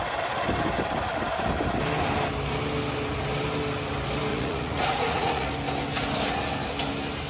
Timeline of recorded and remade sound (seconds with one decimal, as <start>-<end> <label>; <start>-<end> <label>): 0.0-4.3 recorded; 4.3-5.5 remade; 5.5-7.3 recorded

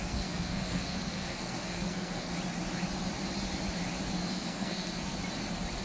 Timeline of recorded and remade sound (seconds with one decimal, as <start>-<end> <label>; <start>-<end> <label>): 0.0-2.3 remade; 2.3-4.3 recorded; 4.3-5.1 remade; 5.1-5.8 recorded

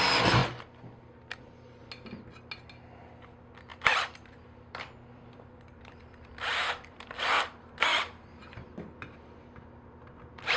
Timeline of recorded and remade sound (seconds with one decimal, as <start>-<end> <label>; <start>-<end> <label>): 0.0-3.7 recorded; 3.7-7.3 remade; 7.3-7.9 recorded; 7.9-8.5 remade; 8.5-10.6 recorded

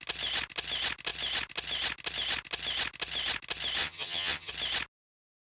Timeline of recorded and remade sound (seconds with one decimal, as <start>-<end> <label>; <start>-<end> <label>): 0.0-3.8 recorded; 3.8-4.5 remade; 4.5-5.4 recorded

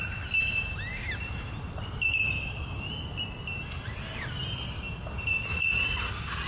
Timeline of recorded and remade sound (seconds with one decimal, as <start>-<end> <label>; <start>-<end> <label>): 0.0-5.5 recorded; 5.5-6.1 remade; 6.1-6.5 recorded

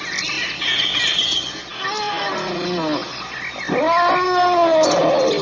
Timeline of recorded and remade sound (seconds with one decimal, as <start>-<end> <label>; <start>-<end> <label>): 0.0-5.4 recorded

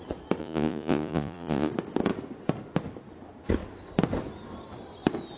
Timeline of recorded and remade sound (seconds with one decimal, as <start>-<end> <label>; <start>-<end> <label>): 0.0-0.4 recorded; 0.4-1.7 remade; 1.7-5.4 recorded

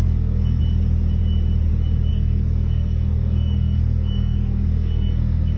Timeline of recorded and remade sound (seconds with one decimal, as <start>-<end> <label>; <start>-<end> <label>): 0.0-0.6 remade; 0.6-2.1 recorded; 2.1-5.6 remade